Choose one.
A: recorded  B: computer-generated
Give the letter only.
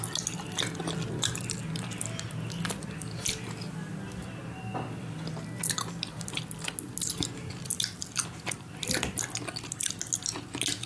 A